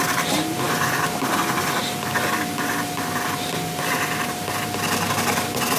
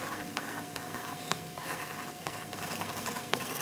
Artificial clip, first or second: second